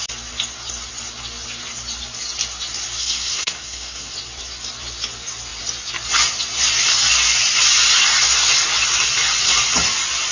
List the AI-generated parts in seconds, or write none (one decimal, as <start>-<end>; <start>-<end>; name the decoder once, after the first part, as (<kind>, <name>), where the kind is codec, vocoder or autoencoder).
3.0-4.1 (codec, SNAC)